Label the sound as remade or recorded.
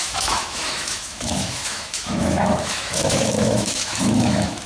remade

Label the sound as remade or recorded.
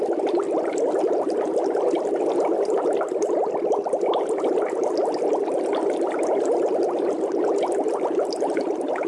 recorded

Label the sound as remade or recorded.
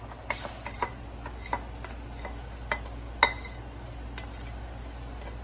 recorded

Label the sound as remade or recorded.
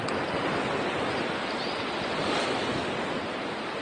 recorded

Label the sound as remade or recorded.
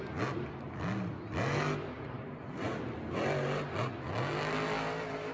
recorded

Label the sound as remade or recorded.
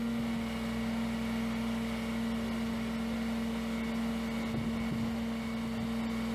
recorded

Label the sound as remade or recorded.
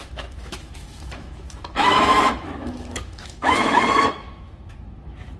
remade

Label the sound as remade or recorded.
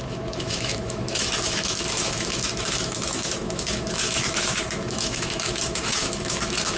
remade